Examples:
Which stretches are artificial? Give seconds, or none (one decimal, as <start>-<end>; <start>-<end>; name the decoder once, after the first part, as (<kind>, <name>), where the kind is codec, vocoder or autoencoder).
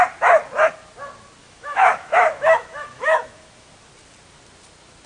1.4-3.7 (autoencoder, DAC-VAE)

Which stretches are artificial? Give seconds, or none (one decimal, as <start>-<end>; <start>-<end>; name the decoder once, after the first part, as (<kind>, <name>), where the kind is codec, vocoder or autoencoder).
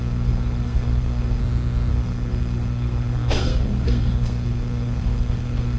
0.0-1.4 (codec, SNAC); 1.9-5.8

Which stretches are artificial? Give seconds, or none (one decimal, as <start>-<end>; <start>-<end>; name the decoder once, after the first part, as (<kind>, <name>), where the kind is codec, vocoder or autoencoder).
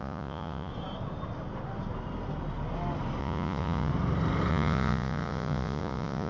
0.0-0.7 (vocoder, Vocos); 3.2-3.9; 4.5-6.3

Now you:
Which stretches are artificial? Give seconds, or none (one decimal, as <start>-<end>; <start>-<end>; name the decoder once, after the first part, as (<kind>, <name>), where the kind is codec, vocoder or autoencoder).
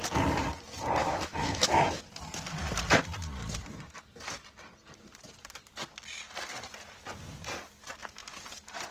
1.0-2.0 (autoencoder, DAC-VAE)